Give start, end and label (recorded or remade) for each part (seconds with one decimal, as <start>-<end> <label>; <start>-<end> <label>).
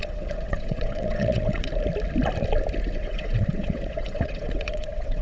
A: 0.0-1.7 remade; 1.7-2.8 recorded; 2.8-5.2 remade